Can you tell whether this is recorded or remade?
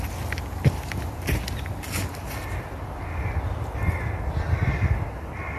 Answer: recorded